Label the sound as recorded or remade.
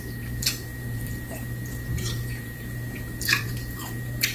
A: remade